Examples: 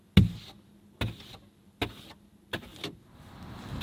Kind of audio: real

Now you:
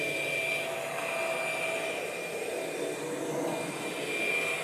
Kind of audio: real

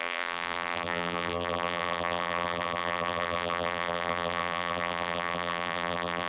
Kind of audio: fake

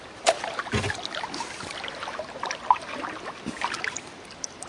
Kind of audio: real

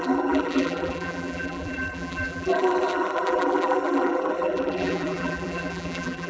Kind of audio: fake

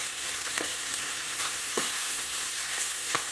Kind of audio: fake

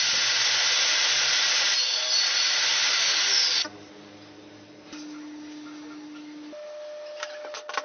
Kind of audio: real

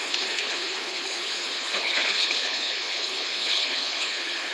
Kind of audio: fake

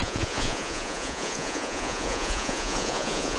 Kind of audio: fake